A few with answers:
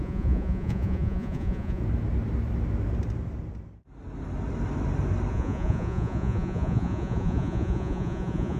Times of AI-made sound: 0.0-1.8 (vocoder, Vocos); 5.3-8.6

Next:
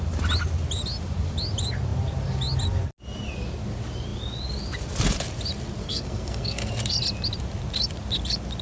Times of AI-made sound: 5.8-6.7 (codec, SNAC)

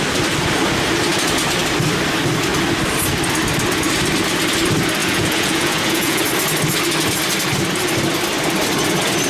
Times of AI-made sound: 5.0-6.2 (vocoder, Vocos)

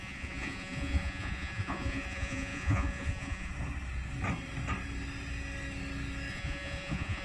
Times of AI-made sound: 0.0-3.5 (vocoder, Vocos); 6.3-7.2

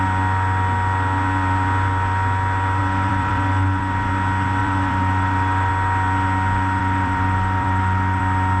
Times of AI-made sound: 2.8-4.1 (vocoder, BigVGAN v2); 4.6-5.7; 6.8-8.2

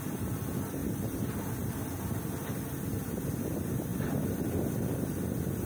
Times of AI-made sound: 0.8-3.2 (vocoder, BigVGAN v2)

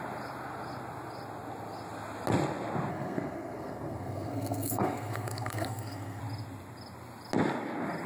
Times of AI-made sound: 2.9-6.2 (codec, SNAC)